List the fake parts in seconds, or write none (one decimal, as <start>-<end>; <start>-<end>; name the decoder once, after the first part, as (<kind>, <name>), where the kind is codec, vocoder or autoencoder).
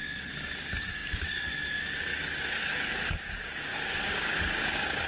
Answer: 0.0-5.1 (codec, DAC)